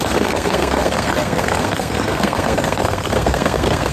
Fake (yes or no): yes